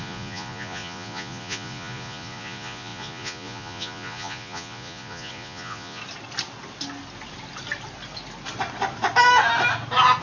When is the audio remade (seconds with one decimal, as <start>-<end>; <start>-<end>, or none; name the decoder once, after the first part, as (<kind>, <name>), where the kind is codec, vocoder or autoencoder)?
0.0-6.0 (vocoder, Vocos)